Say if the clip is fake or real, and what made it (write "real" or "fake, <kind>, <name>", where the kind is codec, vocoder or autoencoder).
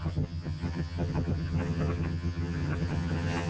fake, vocoder, HiFi-GAN